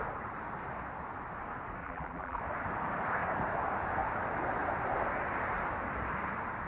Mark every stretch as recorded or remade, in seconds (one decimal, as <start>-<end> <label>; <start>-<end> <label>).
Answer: 0.0-1.8 recorded; 1.8-2.4 remade; 2.4-6.7 recorded